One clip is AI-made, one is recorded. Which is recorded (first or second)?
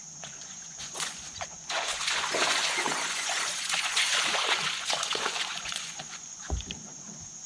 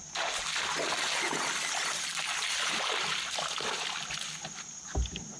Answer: second